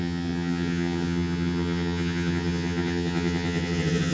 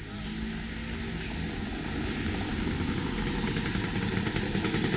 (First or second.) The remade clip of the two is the first